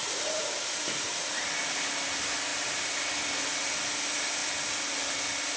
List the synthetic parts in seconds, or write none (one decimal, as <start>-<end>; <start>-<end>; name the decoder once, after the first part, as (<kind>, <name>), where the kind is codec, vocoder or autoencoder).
0.0-1.3 (vocoder, BigVGAN v2)